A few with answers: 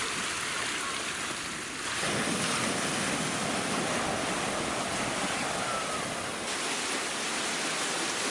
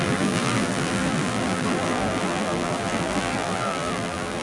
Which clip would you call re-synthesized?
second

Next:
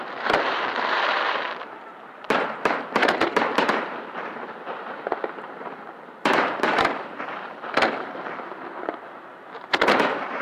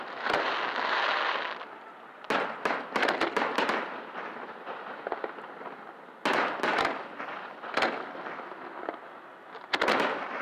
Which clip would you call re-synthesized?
first